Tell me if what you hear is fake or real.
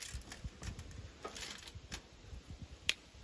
real